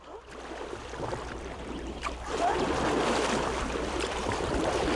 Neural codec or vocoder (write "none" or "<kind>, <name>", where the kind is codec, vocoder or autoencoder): vocoder, BigVGAN v2